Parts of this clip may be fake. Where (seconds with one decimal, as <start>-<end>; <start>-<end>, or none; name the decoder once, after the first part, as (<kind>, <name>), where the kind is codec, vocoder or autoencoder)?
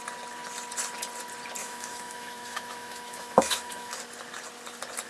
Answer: 1.6-3.9 (autoencoder, DAC-VAE)